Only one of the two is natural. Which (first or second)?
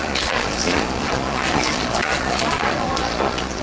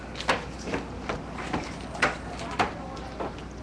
second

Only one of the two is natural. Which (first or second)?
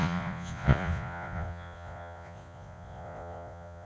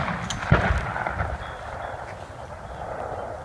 second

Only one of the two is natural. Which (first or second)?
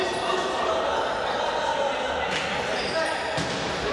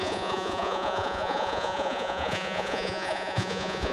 first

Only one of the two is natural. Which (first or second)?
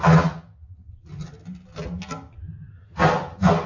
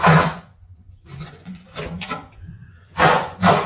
first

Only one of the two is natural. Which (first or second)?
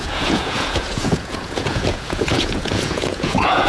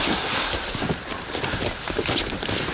second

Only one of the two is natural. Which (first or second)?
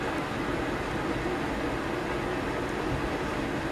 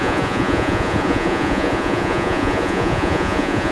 first